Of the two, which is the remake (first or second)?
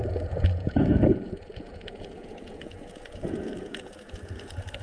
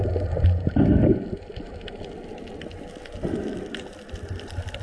first